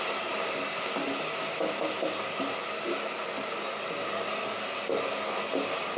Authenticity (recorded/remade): recorded